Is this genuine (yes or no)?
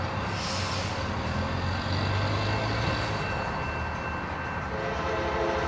yes